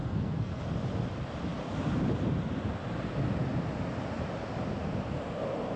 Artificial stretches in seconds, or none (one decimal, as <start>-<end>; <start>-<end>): 0.0-0.6